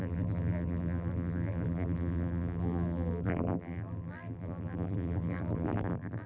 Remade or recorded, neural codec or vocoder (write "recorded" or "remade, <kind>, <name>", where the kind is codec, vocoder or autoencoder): remade, vocoder, BigVGAN v2